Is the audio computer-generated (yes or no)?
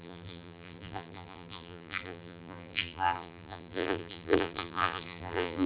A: yes